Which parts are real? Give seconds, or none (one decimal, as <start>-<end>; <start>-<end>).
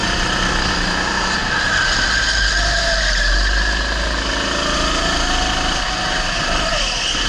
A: 0.0-7.3